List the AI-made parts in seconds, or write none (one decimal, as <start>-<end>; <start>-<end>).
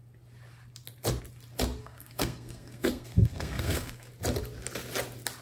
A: 1.8-4.1